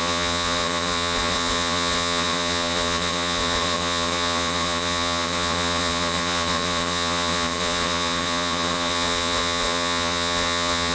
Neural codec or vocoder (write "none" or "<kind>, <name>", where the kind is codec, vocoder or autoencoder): vocoder, Vocos